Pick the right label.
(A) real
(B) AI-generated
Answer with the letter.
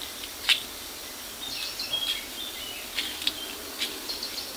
A